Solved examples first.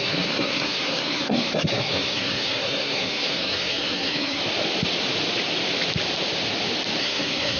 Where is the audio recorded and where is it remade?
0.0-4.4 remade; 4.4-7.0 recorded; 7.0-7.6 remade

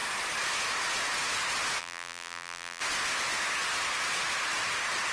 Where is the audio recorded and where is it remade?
0.0-1.8 recorded; 1.8-2.8 remade; 2.8-5.1 recorded

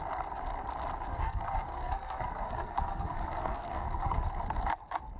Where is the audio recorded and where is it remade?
0.0-1.1 recorded; 1.1-4.2 remade; 4.2-5.2 recorded

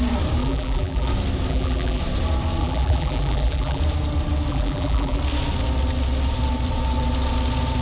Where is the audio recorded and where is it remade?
0.0-0.4 recorded; 0.4-1.1 remade; 1.1-1.5 recorded; 1.5-2.0 remade; 2.0-2.6 recorded; 2.6-3.8 remade; 3.8-4.5 recorded; 4.5-5.2 remade; 5.2-7.8 recorded

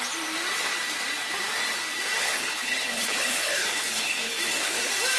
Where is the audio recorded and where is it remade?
0.0-2.2 recorded; 2.2-4.8 remade; 4.8-5.2 recorded

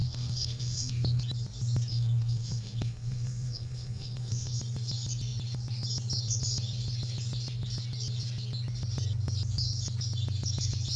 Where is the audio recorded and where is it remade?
0.0-1.2 remade; 1.2-1.9 recorded; 1.9-4.6 remade; 4.6-11.0 recorded

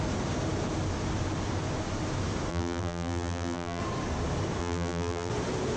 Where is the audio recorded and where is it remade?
0.0-2.5 recorded; 2.5-3.8 remade; 3.8-4.6 recorded; 4.6-5.3 remade; 5.3-5.8 recorded

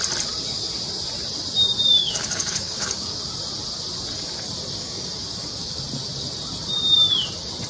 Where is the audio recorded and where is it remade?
0.0-2.0 recorded; 2.0-3.2 remade; 3.2-4.8 recorded; 4.8-5.8 remade; 5.8-7.7 recorded